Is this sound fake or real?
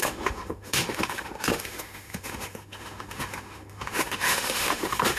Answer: fake